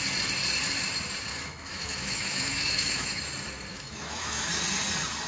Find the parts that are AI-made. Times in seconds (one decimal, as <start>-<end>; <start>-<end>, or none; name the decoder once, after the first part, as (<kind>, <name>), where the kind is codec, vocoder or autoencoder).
1.3-3.2 (autoencoder, DAC-VAE); 3.7-4.5